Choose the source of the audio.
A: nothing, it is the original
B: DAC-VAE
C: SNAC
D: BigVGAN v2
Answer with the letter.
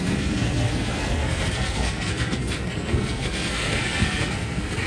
C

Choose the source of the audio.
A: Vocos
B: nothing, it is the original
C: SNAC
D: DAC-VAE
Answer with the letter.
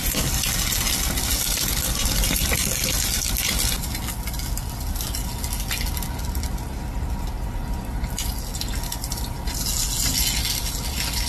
B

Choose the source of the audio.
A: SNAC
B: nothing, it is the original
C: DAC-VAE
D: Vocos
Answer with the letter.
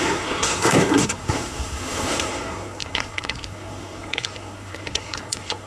A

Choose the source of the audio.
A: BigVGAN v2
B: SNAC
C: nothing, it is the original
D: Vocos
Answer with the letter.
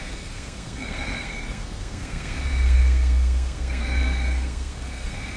B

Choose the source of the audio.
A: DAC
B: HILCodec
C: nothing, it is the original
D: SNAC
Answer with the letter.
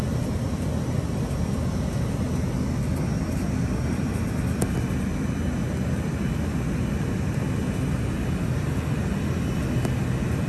C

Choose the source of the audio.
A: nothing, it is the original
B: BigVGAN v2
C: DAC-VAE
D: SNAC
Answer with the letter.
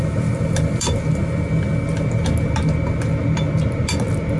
A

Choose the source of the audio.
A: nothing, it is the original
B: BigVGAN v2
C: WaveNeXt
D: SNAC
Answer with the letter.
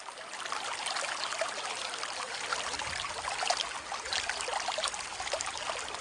A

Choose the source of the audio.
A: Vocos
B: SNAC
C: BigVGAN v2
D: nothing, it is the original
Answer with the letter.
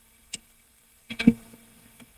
B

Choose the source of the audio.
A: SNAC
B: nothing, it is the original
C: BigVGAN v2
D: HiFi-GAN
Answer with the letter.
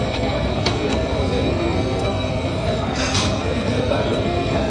A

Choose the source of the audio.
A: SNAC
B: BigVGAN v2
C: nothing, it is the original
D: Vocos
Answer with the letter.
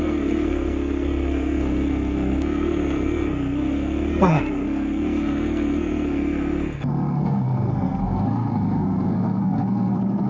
A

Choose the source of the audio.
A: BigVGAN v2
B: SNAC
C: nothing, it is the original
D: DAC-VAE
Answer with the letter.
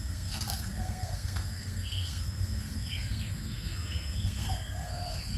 B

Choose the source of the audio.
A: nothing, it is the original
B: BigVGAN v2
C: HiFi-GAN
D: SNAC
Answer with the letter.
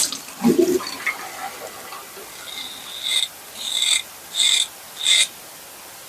A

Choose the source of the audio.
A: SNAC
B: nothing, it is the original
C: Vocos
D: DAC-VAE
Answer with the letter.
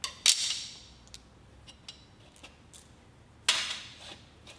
B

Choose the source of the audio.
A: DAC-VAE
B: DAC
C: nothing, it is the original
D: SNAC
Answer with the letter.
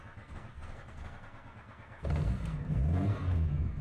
D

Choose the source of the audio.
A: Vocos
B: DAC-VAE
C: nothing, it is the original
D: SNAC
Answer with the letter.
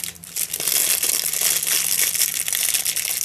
C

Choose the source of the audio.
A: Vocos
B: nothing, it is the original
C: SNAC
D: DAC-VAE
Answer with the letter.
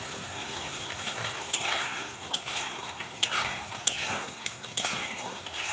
C